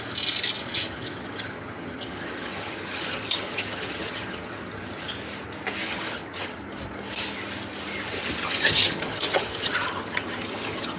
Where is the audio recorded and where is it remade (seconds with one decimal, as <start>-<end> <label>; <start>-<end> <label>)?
0.0-0.6 recorded; 0.6-5.1 remade; 5.1-5.8 recorded; 5.8-6.6 remade; 6.6-8.4 recorded; 8.4-11.0 remade